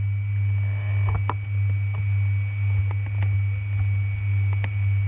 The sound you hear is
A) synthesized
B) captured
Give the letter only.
B